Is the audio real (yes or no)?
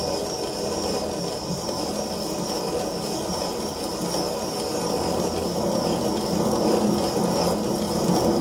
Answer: yes